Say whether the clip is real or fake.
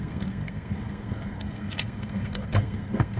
fake